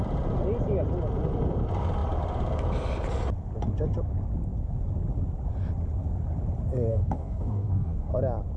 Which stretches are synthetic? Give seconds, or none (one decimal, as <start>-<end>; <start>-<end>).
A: 6.9-8.1